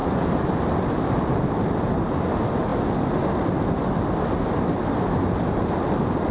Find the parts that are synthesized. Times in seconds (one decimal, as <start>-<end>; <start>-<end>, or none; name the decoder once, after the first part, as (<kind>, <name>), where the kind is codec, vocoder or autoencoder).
none